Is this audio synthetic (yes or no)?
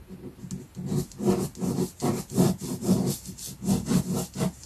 no